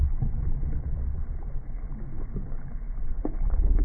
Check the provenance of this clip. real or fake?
fake